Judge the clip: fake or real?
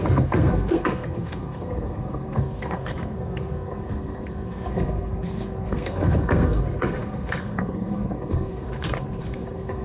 fake